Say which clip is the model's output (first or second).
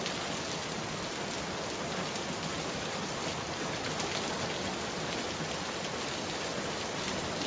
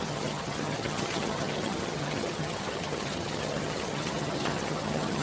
second